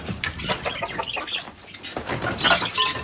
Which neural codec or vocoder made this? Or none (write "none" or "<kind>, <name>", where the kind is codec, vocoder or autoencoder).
none